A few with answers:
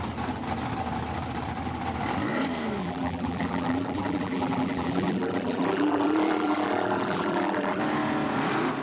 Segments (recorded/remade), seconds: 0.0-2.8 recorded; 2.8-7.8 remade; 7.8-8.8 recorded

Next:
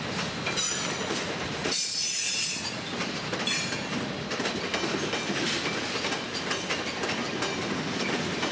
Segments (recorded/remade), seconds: 0.0-1.6 recorded; 1.6-2.8 remade; 2.8-8.5 recorded

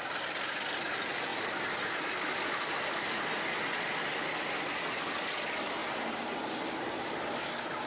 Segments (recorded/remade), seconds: 0.0-1.3 recorded; 1.3-1.8 remade; 1.8-7.9 recorded

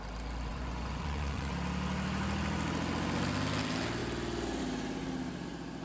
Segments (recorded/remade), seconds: 0.0-0.5 recorded; 0.5-1.5 remade; 1.5-5.8 recorded

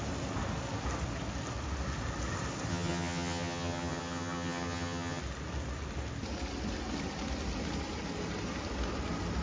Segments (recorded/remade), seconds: 0.0-2.7 recorded; 2.7-5.2 remade; 5.2-9.4 recorded

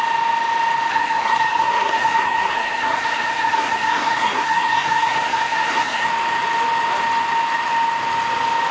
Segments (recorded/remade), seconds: 0.0-0.9 recorded; 0.9-6.1 remade; 6.1-8.7 recorded

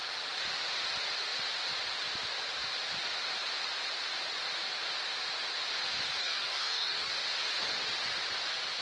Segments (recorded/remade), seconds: 0.0-6.2 recorded; 6.2-7.1 remade; 7.1-8.8 recorded

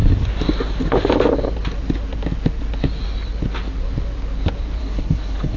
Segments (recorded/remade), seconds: 0.0-4.8 recorded; 4.8-5.6 remade